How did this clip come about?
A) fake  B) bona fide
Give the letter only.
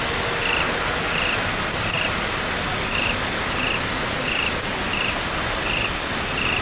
B